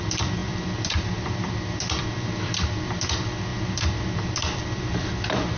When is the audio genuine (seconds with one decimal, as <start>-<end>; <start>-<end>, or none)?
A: none